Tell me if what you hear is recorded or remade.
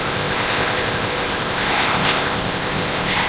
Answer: remade